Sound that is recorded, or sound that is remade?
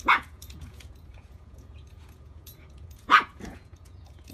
remade